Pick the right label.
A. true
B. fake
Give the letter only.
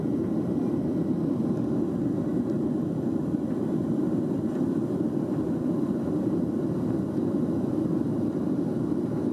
B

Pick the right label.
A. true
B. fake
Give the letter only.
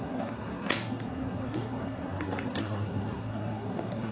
B